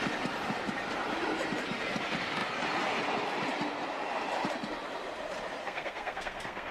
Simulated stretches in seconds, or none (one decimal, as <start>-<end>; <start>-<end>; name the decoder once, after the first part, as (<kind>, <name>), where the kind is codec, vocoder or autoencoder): 5.6-6.7 (codec, SNAC)